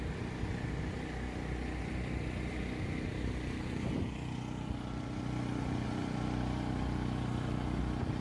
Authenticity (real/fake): real